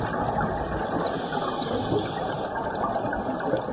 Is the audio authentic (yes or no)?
yes